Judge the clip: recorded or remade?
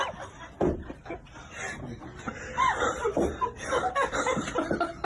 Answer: recorded